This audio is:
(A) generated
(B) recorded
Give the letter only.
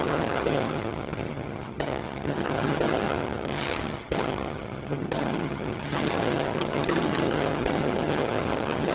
A